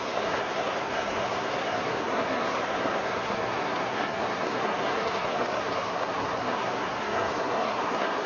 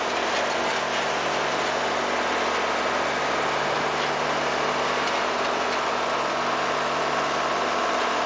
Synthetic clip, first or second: first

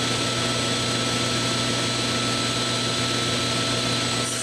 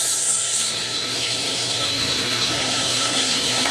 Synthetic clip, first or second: second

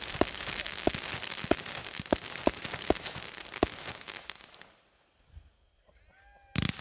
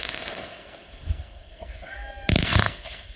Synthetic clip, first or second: second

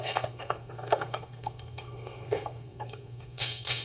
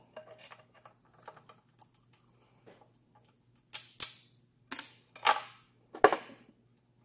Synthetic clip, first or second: first